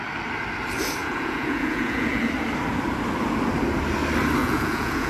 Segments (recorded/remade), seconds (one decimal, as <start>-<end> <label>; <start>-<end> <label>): 0.0-1.0 recorded; 1.0-2.3 remade; 2.3-4.4 recorded; 4.4-5.1 remade